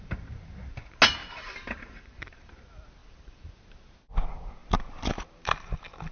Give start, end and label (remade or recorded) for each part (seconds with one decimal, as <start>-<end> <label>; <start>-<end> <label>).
0.0-1.2 recorded; 1.2-2.5 remade; 2.5-3.0 recorded; 3.0-3.6 remade; 3.6-6.1 recorded